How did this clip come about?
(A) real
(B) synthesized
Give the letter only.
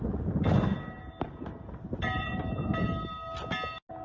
A